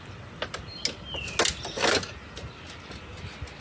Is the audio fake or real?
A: real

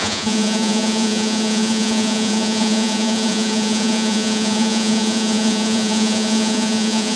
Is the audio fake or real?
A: fake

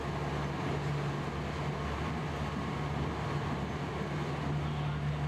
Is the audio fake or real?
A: real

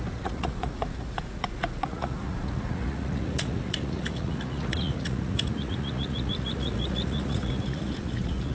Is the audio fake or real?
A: fake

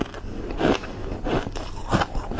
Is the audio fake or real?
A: real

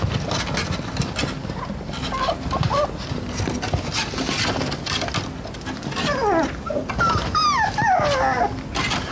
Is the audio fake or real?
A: real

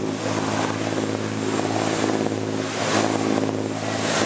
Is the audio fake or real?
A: real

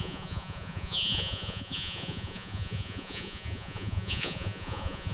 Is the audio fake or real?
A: fake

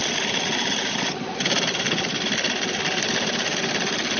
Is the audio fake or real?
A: real